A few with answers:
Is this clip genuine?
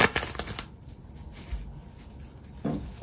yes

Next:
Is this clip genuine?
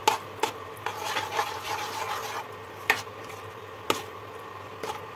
yes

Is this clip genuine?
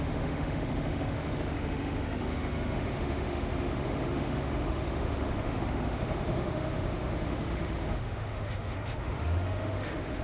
no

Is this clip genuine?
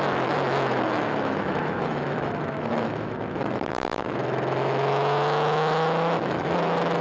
no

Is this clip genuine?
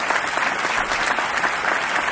yes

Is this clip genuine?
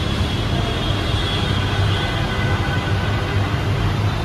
yes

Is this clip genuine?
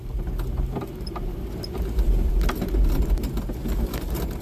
yes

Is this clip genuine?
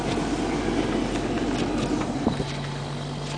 yes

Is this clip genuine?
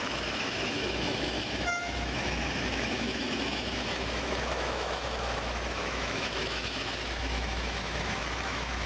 no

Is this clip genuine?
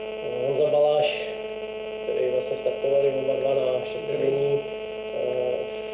yes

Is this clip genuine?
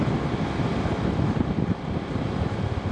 yes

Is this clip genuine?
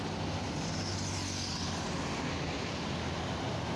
yes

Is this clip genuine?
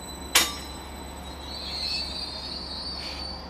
yes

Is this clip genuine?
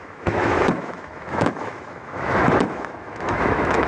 no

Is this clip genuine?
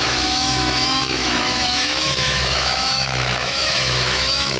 no